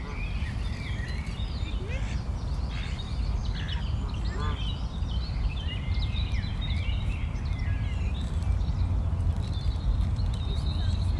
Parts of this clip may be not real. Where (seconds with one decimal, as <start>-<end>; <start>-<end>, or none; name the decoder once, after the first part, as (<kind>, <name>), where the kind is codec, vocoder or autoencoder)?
0.0-7.2 (vocoder, BigVGAN v2)